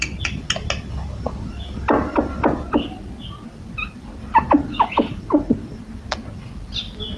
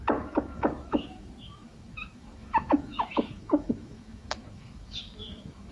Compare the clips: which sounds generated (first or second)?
second